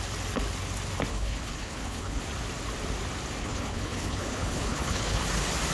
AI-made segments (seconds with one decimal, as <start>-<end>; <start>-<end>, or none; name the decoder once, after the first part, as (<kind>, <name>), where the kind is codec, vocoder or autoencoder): 1.1-2.2 (codec, HILCodec); 3.4-5.2